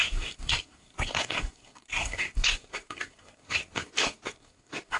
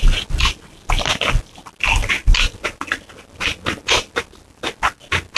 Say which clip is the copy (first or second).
first